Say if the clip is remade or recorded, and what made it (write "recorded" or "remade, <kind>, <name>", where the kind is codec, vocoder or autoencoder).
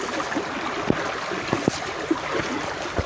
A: recorded